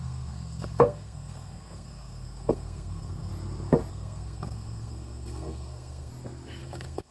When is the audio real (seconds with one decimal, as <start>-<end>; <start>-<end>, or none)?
3.3-3.9; 6.1-6.6